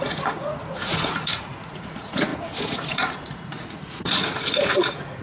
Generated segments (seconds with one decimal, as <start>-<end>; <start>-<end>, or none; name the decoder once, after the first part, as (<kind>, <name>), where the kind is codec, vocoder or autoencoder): 0.0-5.2 (vocoder, Vocos)